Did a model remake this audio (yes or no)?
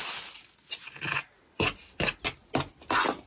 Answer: no